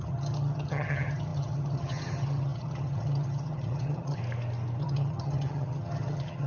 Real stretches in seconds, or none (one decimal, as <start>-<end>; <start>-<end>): 4.2-4.8